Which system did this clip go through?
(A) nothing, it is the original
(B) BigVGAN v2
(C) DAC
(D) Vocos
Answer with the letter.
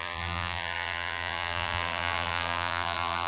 B